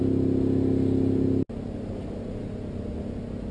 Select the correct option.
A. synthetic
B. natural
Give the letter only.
B